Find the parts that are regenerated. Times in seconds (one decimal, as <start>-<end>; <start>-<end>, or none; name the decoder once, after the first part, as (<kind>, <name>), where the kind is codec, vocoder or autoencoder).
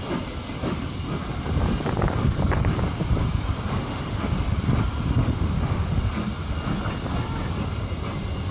3.7-4.2 (autoencoder, DAC-VAE); 5.2-6.0